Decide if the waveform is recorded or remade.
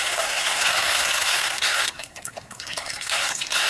remade